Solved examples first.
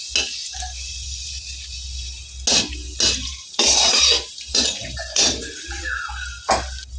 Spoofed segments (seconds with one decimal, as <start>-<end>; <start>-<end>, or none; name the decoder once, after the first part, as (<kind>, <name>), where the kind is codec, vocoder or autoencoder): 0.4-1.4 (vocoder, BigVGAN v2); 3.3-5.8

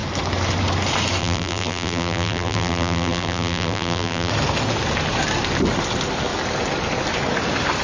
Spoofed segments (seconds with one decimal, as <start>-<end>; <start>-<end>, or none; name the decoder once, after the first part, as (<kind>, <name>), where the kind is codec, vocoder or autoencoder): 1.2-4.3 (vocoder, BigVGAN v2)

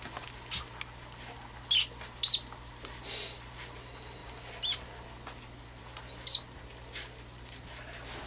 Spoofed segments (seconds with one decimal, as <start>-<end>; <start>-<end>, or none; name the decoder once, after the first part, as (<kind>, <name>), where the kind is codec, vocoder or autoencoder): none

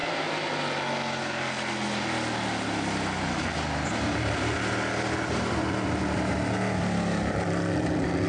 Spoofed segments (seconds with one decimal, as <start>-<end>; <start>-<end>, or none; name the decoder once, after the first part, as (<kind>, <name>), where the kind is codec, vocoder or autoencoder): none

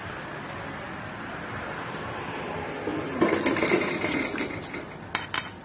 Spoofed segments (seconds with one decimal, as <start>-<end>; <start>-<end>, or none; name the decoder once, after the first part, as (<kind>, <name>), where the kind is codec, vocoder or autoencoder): none

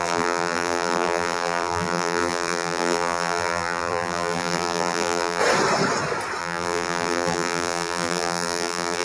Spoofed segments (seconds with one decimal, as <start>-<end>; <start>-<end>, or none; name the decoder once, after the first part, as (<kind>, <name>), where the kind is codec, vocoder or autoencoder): 0.0-5.4 (vocoder, BigVGAN v2); 6.4-9.0